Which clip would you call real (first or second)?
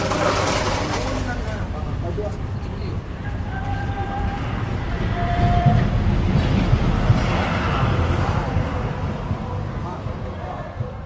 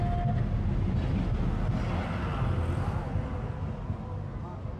second